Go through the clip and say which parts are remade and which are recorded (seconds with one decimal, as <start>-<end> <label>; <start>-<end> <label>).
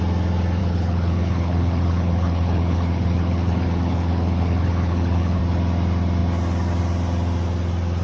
0.0-0.6 recorded; 0.6-5.4 remade; 5.4-8.0 recorded